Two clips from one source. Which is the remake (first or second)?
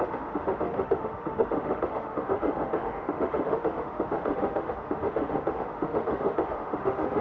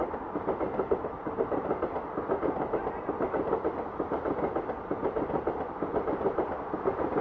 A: first